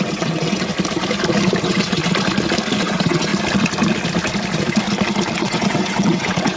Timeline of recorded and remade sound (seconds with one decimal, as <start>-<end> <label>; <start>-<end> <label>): 0.0-0.7 remade; 0.7-1.6 recorded; 1.6-2.0 remade; 2.0-2.8 recorded; 2.8-3.3 remade; 3.3-5.4 recorded; 5.4-6.6 remade